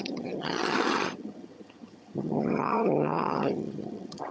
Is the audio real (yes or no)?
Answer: no